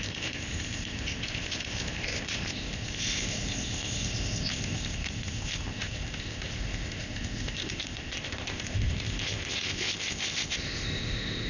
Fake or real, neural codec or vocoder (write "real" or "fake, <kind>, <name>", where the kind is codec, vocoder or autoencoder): fake, codec, ZipCodec